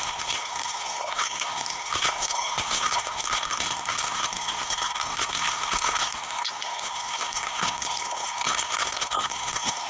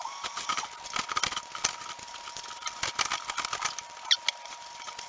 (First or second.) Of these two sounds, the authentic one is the second